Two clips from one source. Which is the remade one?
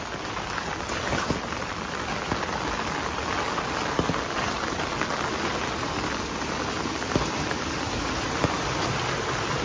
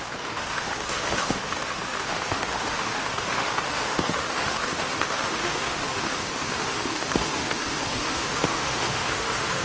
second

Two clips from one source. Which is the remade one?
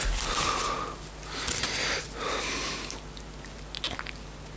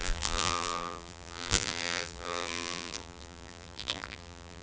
second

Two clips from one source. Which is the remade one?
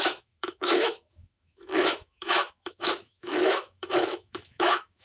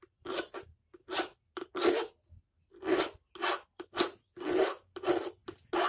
first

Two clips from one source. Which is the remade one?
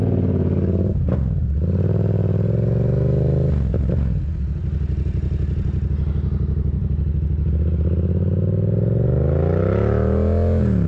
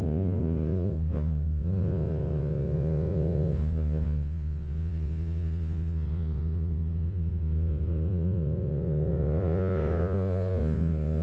second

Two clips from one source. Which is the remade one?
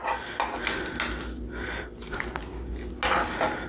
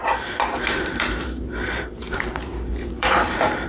second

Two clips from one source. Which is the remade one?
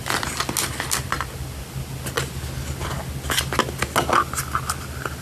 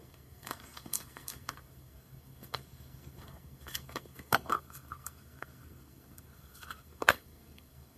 second